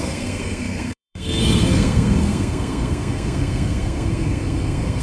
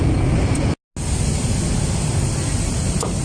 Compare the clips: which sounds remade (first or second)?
first